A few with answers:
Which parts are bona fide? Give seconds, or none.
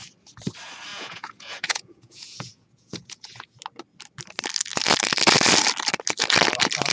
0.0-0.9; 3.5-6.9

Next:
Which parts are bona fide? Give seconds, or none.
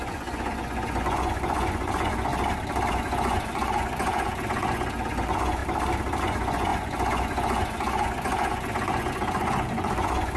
2.3-2.9; 5.6-6.2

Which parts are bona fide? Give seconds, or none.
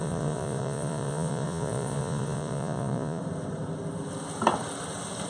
3.2-5.3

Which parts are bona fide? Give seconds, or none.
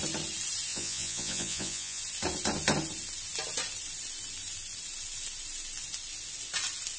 0.0-0.7; 2.0-7.0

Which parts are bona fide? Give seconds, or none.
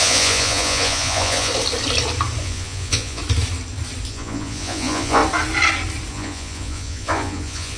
1.5-2.4; 3.2-4.1; 5.2-6.1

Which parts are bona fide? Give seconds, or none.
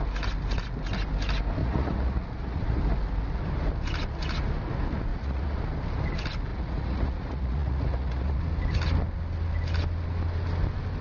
0.0-1.6; 2.8-5.1; 5.6-6.5; 8.4-11.0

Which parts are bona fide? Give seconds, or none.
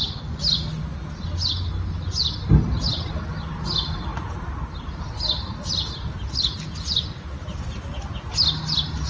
0.0-9.1